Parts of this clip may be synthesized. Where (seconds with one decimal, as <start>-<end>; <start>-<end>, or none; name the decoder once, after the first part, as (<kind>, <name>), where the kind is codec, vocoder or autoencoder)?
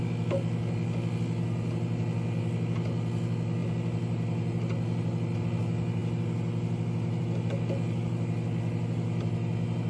none